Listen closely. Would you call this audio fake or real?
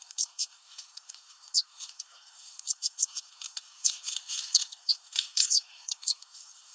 fake